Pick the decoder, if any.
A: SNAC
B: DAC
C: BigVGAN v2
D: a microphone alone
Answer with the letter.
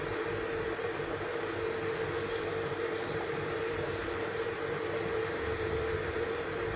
C